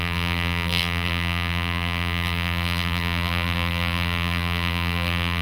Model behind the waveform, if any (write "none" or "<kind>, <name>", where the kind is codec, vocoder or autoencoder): vocoder, BigVGAN v2